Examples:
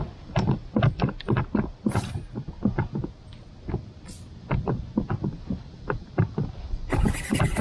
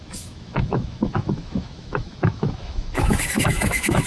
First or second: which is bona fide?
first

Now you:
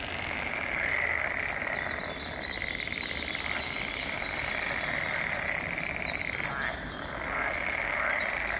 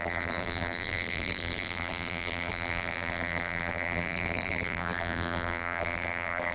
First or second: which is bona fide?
first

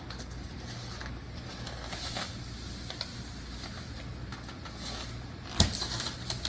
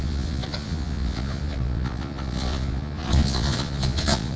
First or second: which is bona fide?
first